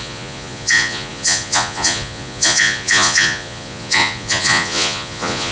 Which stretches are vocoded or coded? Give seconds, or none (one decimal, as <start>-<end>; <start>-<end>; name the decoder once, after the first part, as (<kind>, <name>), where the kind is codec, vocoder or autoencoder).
0.0-5.5 (vocoder, Vocos)